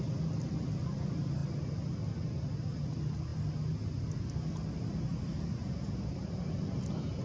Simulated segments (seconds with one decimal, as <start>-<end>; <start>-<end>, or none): none